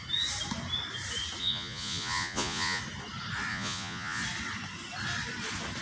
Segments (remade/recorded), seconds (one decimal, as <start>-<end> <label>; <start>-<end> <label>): 0.0-1.4 recorded; 1.4-2.8 remade; 2.8-3.5 recorded; 3.5-4.2 remade; 4.2-5.8 recorded